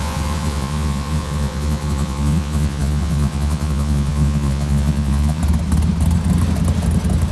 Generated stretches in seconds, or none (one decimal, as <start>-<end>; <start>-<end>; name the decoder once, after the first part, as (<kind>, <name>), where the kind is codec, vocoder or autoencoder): 0.0-5.4 (vocoder, Vocos)